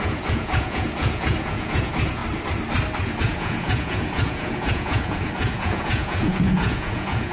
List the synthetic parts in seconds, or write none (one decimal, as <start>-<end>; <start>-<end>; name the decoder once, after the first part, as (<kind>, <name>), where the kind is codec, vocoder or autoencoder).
0.0-2.2 (vocoder, Vocos); 3.2-7.3